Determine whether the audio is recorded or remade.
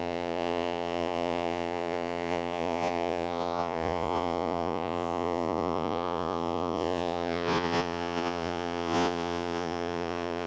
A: remade